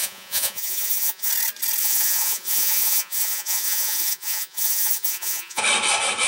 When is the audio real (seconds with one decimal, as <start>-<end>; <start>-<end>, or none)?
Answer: 1.3-1.8; 5.6-6.3